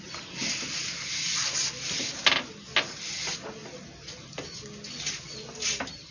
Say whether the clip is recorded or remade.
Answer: recorded